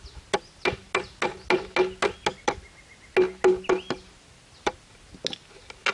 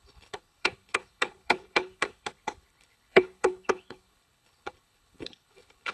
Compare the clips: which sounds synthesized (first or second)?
second